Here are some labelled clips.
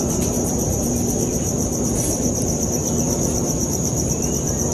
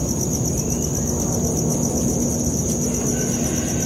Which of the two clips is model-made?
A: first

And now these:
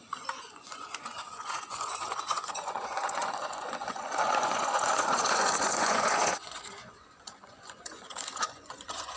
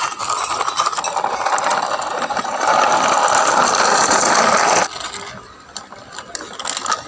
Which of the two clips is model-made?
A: first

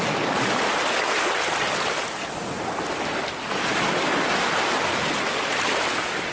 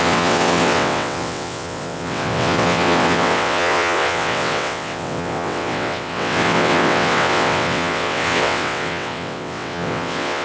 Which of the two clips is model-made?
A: second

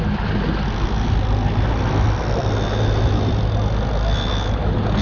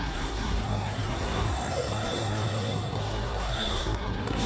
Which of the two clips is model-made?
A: second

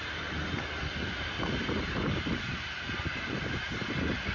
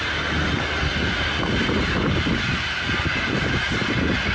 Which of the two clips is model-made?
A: first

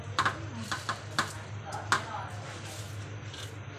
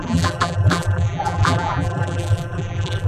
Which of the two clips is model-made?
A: second